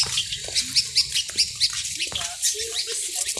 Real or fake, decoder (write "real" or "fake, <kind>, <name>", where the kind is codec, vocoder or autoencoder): real